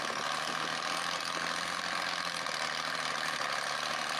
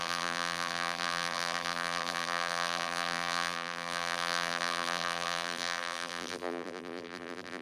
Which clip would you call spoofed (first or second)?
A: second